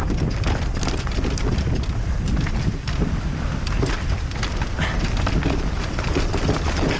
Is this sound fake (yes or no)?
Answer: no